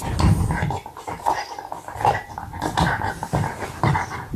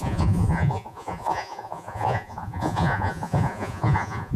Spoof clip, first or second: second